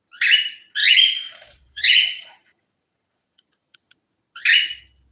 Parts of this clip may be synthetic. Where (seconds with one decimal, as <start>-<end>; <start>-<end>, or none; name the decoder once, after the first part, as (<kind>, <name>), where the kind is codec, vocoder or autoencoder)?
0.8-3.9 (vocoder, Vocos)